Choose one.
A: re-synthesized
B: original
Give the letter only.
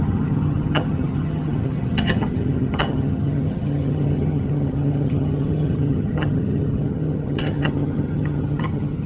A